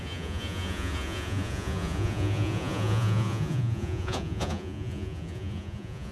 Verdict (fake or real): fake